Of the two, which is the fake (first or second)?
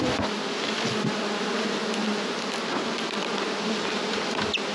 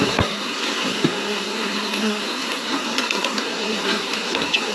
second